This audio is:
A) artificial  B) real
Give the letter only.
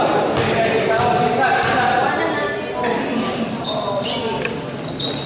B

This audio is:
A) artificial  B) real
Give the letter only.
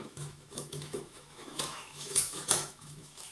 A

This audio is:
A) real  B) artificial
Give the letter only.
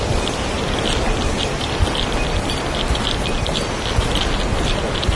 A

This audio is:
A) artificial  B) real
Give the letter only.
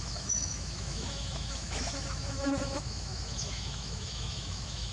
A